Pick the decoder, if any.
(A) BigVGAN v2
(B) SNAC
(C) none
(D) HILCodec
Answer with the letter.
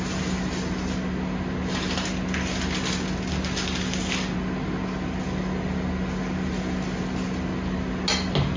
C